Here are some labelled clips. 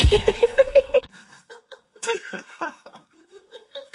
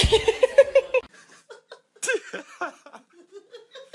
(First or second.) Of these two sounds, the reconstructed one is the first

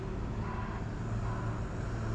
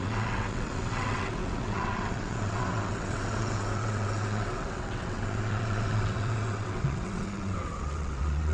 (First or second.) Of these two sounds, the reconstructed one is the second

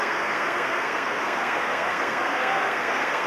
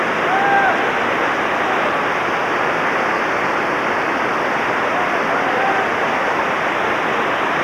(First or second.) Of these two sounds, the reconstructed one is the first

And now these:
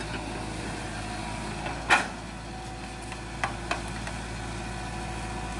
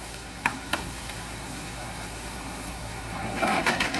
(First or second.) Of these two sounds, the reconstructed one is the second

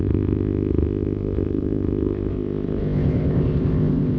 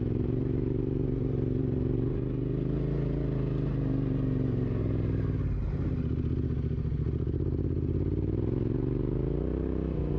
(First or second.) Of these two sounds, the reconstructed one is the first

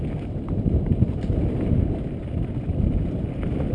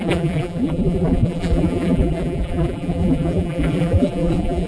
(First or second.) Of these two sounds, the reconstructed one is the second